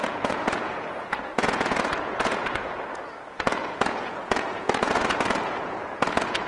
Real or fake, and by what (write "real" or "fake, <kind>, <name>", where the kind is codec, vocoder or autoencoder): fake, vocoder, Vocos